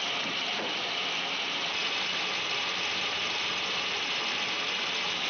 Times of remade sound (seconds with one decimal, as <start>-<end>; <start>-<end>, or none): none